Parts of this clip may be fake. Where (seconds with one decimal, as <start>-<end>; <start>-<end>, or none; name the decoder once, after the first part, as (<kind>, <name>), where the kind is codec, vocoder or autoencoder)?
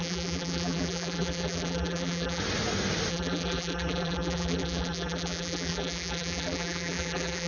0.0-2.4 (vocoder, BigVGAN v2); 3.1-7.5